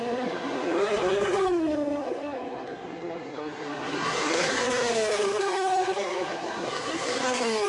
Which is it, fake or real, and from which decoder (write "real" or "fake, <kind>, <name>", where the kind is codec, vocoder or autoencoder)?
fake, codec, SNAC